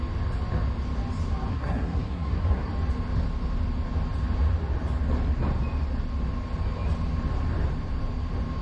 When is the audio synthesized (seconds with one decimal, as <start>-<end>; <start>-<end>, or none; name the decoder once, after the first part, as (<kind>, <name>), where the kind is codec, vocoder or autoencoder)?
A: 1.5-2.7 (codec, SNAC)